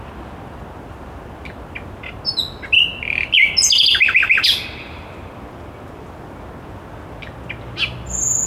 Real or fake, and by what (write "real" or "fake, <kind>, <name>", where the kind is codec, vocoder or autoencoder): real